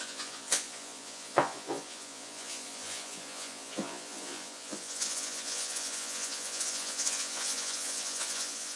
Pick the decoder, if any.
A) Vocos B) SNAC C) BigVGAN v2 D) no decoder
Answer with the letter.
A